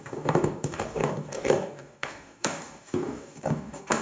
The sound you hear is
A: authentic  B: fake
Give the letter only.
B